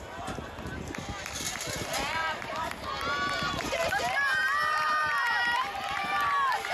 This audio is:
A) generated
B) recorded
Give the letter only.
B